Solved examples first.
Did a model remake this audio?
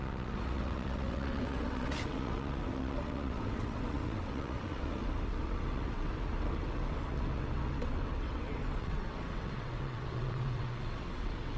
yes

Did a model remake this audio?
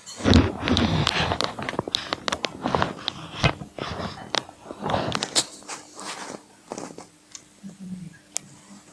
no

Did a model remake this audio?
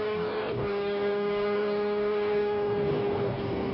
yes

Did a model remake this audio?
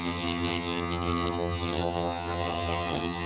yes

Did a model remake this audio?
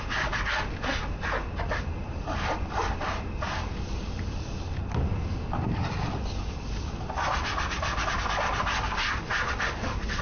no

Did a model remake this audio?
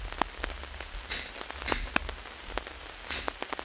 no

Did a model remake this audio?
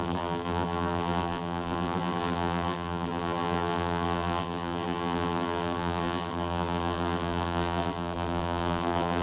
yes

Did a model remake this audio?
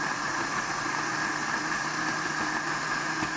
no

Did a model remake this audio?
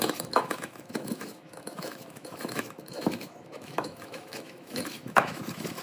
yes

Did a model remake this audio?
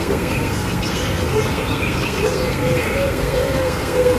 yes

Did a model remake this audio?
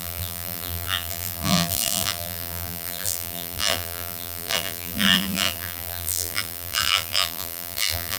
yes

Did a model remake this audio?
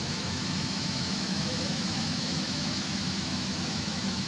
yes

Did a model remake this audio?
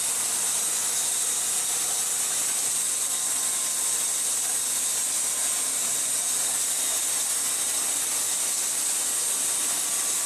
no